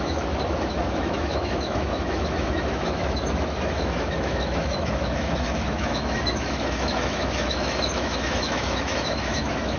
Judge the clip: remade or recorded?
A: remade